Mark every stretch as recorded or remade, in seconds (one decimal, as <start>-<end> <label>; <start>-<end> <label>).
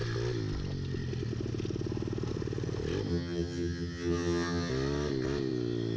0.0-3.1 recorded; 3.1-4.7 remade; 4.7-6.0 recorded